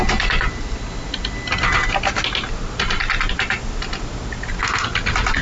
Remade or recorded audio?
recorded